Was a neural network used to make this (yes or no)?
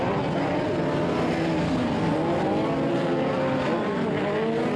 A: no